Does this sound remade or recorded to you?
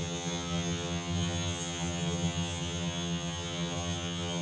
remade